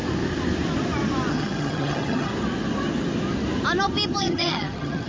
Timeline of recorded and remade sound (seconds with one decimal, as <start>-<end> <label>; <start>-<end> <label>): 0.0-1.3 recorded; 1.3-2.3 remade; 2.3-4.2 recorded; 4.2-5.1 remade